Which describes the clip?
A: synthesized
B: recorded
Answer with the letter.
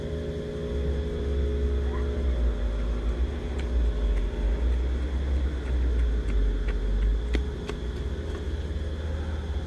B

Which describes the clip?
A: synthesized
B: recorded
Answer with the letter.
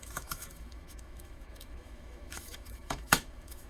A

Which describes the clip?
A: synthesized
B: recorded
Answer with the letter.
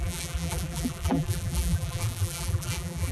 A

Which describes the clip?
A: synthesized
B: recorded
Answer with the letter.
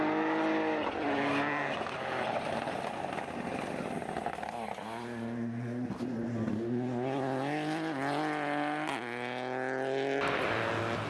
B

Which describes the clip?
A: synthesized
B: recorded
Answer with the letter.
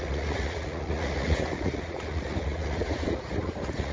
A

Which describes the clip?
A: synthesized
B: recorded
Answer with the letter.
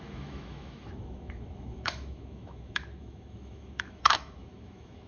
A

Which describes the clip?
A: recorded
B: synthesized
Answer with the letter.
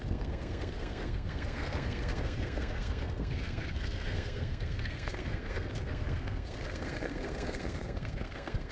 B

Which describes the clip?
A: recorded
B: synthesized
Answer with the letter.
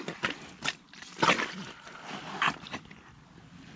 A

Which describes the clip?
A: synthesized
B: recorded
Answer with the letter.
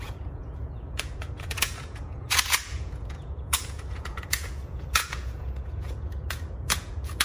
A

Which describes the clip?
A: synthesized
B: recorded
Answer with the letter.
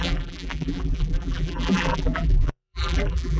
A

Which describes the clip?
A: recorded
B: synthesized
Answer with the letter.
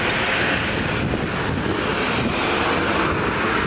A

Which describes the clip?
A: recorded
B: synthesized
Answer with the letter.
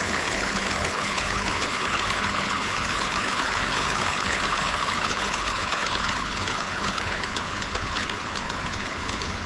B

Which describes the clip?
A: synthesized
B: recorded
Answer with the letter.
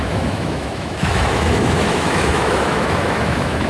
A